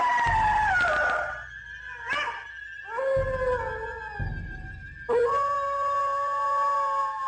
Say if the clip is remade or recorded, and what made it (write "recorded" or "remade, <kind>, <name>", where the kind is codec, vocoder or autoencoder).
recorded